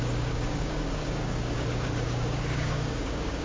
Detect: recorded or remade remade